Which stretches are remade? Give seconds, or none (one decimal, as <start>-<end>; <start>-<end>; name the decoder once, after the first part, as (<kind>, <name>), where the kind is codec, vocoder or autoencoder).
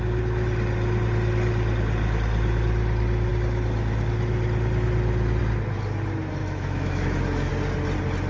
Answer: 6.4-7.5 (autoencoder, DAC-VAE)